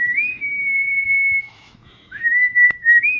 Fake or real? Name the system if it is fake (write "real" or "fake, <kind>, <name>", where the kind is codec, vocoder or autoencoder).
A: fake, autoencoder, DAC-VAE